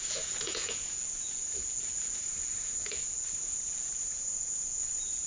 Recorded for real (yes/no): no